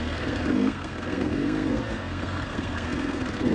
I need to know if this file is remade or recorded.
remade